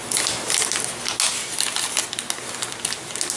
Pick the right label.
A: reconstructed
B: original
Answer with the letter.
B